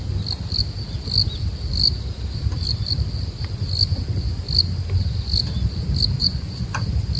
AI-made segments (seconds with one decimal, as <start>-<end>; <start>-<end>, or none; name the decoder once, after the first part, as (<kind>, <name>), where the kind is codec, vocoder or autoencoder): 6.2-6.8 (vocoder, Vocos)